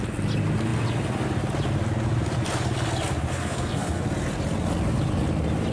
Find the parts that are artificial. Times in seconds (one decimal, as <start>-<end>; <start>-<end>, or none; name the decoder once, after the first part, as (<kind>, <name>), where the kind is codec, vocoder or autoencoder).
3.3-4.0 (codec, SNAC)